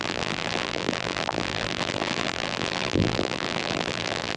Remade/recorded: remade